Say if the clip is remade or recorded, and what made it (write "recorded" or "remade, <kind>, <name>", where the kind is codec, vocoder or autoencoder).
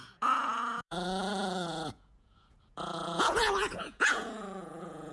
remade, vocoder, Vocos